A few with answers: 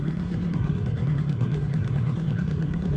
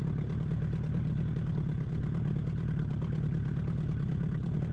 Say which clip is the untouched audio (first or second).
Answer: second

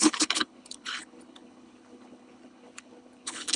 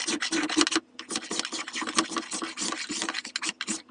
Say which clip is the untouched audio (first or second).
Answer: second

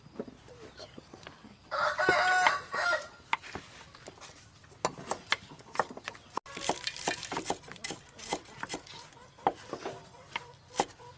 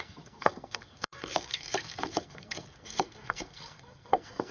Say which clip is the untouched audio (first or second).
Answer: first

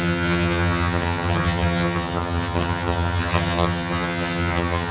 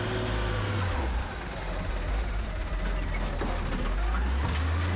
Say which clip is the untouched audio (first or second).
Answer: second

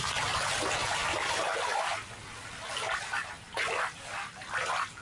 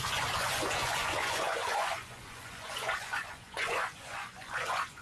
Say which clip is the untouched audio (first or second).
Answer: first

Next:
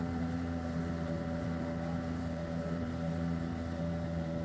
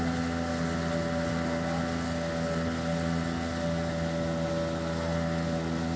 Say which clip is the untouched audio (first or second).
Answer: second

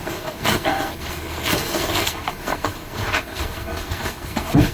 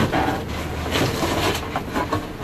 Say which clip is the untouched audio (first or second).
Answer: second